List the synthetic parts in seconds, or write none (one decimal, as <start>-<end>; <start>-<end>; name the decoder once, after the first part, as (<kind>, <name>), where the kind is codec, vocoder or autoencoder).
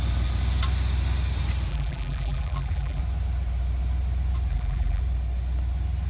1.7-3.0 (vocoder, BigVGAN v2); 4.5-5.0